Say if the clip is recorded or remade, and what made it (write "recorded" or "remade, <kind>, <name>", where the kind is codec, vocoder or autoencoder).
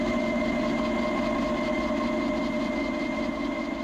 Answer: recorded